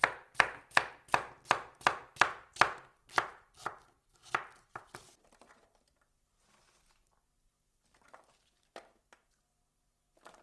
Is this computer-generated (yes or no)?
no